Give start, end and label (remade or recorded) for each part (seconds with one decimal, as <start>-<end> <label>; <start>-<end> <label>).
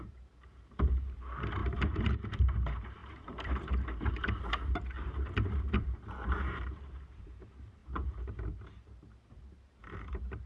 0.0-10.5 remade